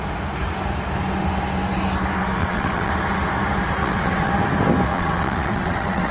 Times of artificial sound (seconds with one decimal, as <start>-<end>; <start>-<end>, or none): 2.4-2.9; 3.8-4.3; 4.9-6.1